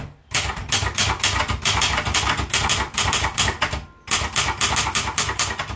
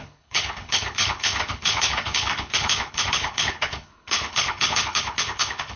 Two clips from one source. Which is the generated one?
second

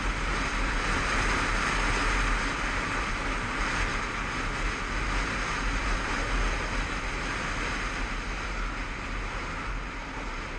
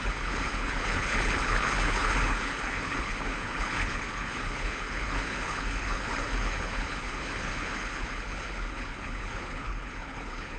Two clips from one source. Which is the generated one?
second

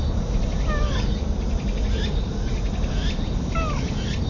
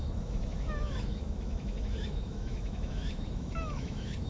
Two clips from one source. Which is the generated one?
second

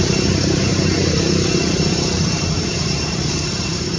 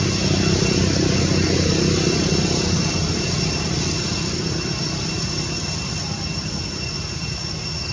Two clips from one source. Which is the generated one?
first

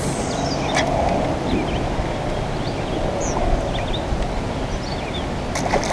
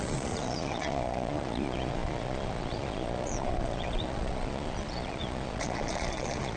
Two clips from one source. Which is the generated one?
second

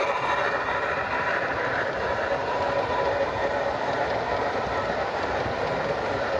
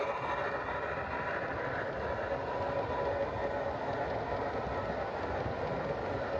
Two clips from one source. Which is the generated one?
first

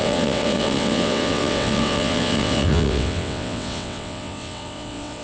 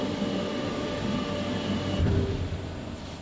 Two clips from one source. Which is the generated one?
first